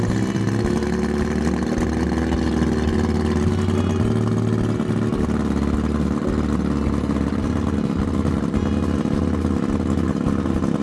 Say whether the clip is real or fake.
real